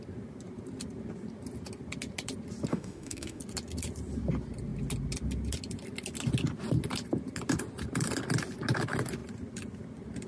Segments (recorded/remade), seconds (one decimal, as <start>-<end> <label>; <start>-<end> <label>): 0.0-2.7 recorded; 2.7-3.4 remade; 3.4-10.3 recorded